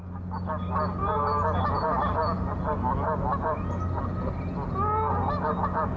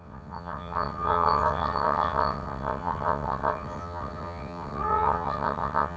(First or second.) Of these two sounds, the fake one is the second